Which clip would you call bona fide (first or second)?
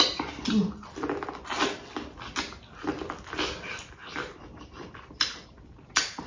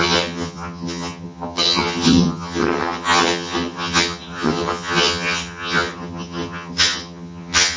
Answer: first